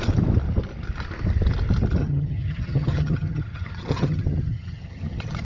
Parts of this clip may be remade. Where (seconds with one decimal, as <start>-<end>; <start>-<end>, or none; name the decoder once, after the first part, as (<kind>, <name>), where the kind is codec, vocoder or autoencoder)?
2.0-5.4 (vocoder, HiFi-GAN)